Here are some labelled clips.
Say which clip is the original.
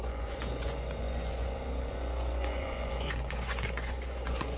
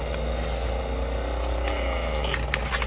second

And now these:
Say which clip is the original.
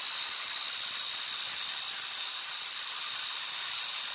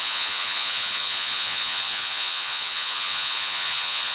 first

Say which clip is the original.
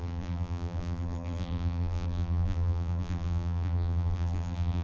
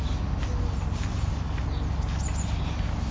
second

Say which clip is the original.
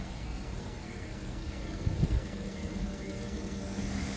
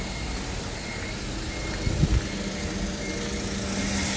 second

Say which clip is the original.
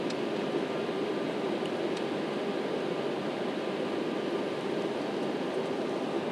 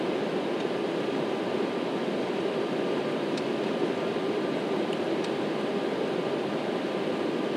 first